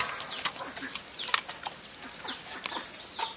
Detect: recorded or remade recorded